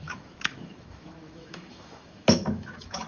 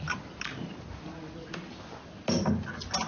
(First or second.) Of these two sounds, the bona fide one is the second